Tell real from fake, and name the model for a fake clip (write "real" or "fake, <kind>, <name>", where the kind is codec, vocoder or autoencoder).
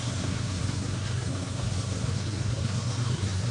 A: fake, codec, SNAC